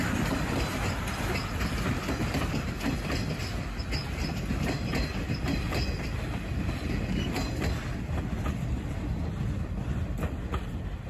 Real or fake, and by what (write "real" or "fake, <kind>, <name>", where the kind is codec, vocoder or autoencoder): fake, vocoder, BigVGAN v2